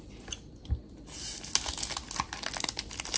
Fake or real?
real